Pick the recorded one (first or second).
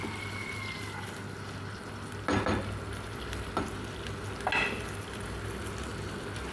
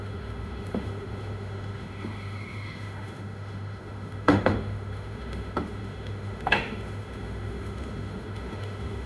first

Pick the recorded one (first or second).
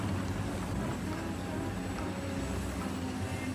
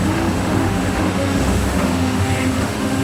first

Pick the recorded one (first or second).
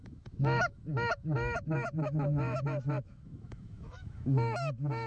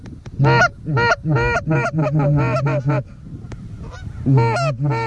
second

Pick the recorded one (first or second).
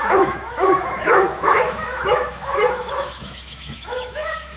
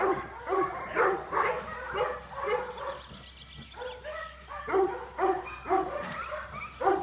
second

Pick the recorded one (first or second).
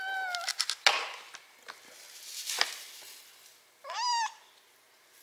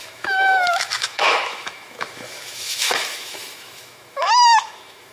first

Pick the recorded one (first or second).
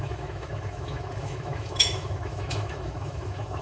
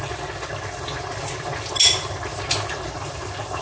second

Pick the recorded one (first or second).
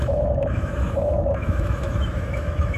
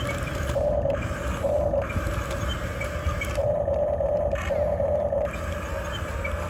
second